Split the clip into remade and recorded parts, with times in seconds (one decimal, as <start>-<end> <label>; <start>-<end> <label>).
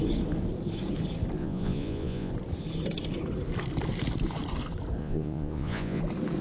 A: 0.0-1.4 recorded; 1.4-2.3 remade; 2.3-5.0 recorded; 5.0-6.0 remade; 6.0-6.4 recorded